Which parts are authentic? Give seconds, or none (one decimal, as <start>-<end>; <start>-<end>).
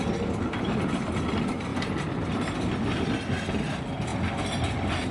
0.0-5.1